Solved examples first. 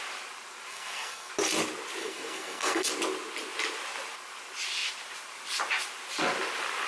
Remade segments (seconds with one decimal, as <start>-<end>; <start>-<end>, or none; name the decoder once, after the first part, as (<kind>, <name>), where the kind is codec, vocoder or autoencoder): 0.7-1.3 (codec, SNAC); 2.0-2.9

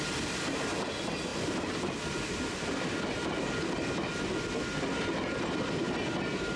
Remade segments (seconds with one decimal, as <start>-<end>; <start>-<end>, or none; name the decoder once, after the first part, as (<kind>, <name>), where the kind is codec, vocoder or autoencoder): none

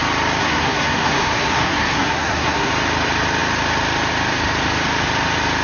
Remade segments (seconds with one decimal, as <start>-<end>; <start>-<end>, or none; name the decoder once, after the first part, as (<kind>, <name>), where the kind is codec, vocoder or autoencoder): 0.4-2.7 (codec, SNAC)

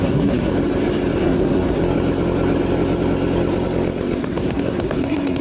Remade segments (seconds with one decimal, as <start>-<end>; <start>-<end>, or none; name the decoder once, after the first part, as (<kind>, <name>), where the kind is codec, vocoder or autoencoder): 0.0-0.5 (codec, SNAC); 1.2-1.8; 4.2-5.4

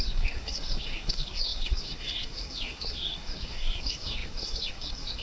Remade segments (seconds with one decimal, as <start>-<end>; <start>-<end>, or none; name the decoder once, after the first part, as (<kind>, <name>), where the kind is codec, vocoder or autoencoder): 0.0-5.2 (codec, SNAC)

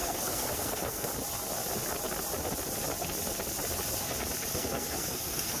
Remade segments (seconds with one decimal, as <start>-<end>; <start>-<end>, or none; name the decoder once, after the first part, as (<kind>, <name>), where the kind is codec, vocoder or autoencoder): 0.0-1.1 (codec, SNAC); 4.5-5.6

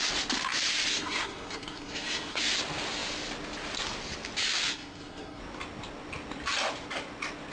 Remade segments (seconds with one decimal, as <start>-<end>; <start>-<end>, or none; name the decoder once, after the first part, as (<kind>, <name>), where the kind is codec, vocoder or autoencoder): 0.9-2.4 (codec, SNAC); 4.7-5.4